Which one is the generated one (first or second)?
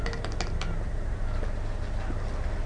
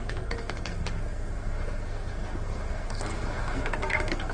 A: second